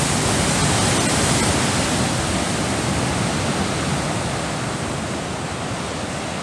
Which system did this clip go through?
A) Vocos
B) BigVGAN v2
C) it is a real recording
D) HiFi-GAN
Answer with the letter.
C